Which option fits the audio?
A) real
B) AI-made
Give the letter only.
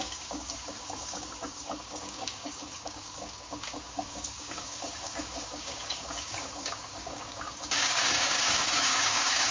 B